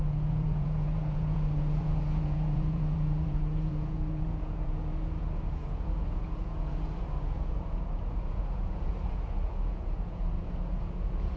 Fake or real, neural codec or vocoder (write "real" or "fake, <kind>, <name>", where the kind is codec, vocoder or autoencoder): fake, vocoder, Vocos